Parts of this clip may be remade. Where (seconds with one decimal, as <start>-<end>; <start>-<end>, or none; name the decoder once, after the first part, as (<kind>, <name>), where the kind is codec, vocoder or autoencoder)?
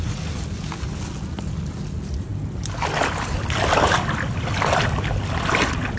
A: none